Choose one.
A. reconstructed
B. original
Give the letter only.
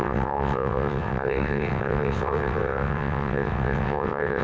A